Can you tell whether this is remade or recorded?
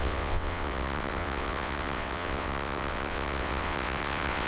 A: remade